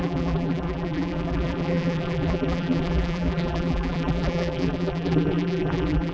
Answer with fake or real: fake